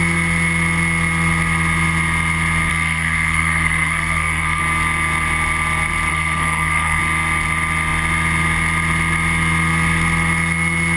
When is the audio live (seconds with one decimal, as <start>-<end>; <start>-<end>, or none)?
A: 0.0-2.7; 4.6-6.1; 7.0-11.0